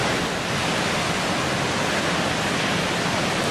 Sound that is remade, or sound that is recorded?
recorded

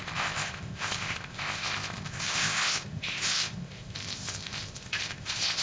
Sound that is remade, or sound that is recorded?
remade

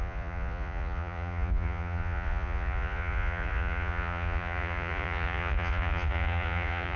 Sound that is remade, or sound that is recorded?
remade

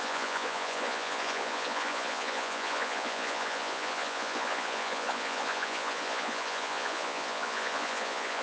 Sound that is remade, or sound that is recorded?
remade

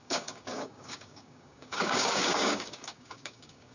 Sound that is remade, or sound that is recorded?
remade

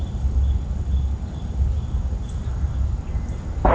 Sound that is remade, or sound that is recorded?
recorded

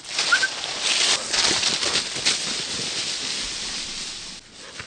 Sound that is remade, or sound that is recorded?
recorded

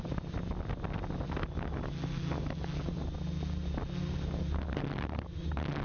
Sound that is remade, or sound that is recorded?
recorded